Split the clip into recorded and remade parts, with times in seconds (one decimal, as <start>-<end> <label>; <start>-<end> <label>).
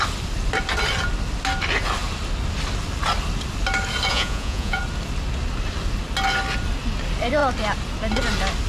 0.0-4.1 recorded; 4.1-4.8 remade; 4.8-8.7 recorded